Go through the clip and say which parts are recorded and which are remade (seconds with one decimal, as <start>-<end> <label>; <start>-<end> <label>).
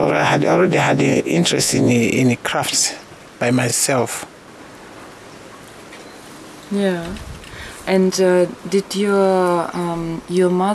0.0-1.9 remade; 1.9-10.7 recorded